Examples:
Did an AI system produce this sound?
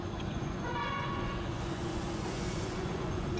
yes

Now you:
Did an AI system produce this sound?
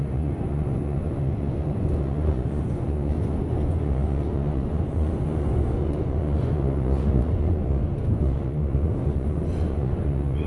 yes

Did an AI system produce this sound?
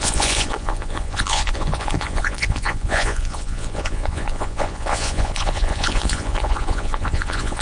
yes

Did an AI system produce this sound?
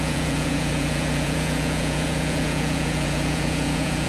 yes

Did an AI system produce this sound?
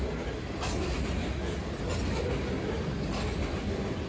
no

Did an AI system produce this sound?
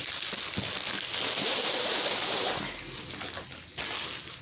no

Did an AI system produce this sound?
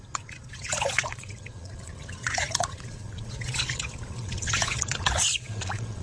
yes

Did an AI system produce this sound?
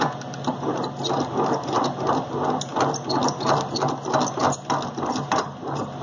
no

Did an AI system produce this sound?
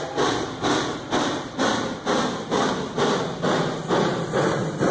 no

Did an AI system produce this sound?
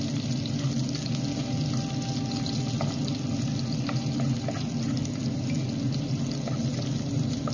no